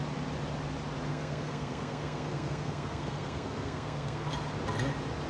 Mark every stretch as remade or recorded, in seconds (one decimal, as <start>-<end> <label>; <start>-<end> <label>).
0.0-1.1 recorded; 1.1-4.3 remade; 4.3-5.3 recorded